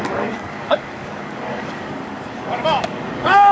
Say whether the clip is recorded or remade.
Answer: remade